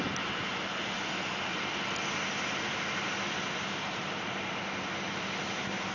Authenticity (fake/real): real